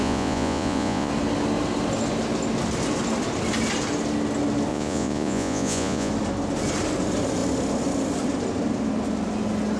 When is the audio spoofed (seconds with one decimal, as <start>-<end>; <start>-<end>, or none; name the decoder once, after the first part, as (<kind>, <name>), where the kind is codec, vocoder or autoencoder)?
0.0-1.1 (vocoder, Vocos); 4.7-6.1